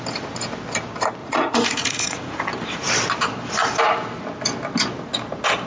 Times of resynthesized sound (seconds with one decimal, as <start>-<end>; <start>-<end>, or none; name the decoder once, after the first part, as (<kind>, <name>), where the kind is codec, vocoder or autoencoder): 1.2-2.4 (vocoder, Vocos)